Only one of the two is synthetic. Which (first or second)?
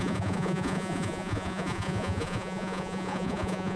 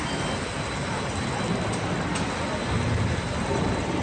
first